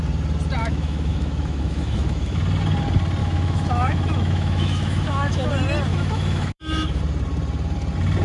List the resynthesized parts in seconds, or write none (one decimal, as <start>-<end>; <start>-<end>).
0.6-2.4; 3.2-5.5; 5.9-7.0